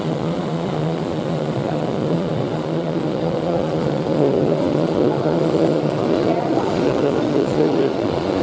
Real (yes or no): no